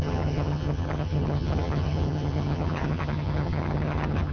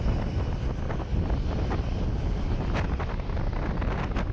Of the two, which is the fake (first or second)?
first